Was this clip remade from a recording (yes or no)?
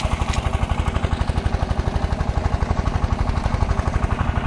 no